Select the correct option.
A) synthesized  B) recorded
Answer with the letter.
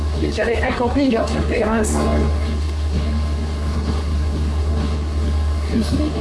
A